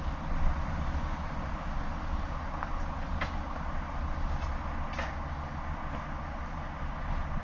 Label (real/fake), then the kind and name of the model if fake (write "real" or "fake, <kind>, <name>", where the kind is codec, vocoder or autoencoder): real